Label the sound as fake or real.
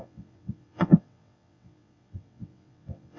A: fake